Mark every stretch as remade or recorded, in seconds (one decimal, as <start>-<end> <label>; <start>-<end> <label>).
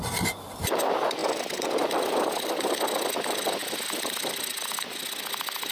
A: 0.0-1.2 recorded; 1.2-2.3 remade; 2.3-3.6 recorded; 3.6-4.7 remade; 4.7-5.7 recorded